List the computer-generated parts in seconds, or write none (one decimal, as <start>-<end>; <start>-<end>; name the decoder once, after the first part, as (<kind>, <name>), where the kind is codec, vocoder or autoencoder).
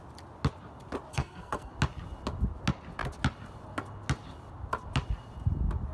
1.1-1.7 (codec, SNAC)